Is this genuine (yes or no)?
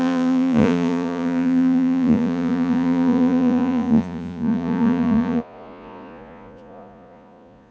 no